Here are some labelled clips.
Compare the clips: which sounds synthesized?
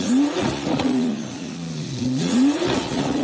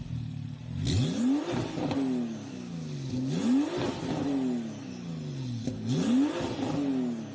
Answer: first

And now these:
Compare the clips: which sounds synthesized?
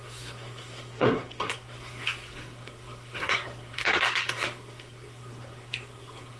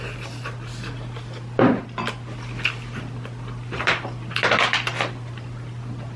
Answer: first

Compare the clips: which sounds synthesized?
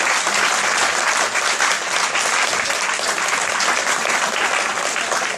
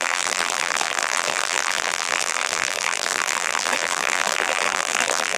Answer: second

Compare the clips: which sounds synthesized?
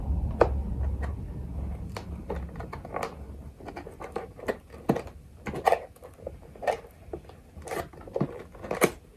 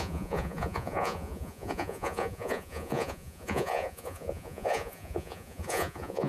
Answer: second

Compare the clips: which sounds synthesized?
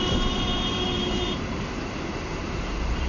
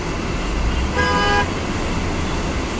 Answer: first